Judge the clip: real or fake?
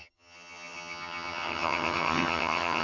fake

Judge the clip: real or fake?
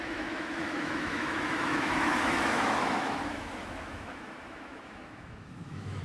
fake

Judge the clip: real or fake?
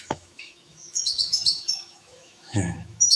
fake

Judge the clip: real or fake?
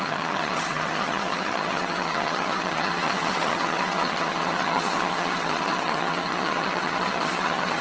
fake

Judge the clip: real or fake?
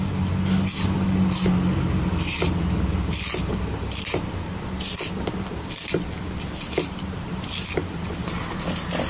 real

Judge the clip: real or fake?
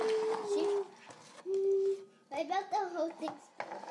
real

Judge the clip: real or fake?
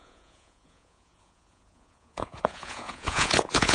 fake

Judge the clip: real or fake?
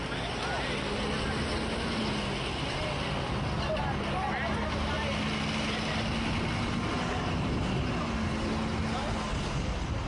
real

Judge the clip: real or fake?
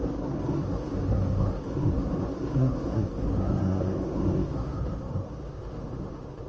fake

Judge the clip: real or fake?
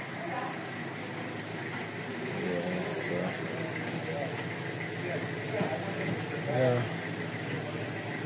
real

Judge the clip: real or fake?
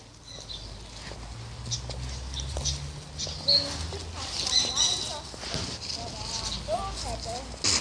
real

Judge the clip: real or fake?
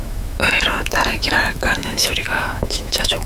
fake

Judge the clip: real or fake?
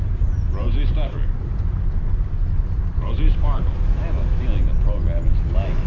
real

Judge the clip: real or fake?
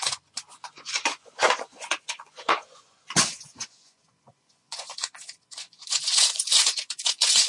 fake